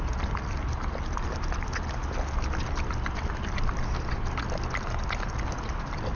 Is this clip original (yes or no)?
yes